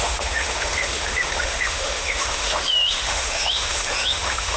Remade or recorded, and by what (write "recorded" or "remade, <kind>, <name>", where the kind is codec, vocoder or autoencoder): remade, autoencoder, DAC-VAE